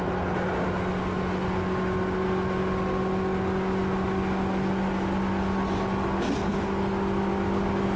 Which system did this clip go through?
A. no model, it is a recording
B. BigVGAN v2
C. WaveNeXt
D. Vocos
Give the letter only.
A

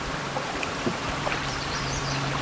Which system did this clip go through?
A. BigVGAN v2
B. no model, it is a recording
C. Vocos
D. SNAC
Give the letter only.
A